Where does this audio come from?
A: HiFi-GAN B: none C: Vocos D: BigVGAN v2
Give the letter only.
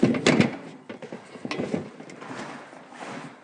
B